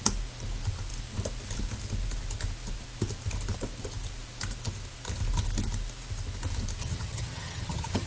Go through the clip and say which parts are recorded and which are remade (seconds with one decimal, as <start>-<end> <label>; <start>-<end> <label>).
0.0-6.8 recorded; 6.8-8.1 remade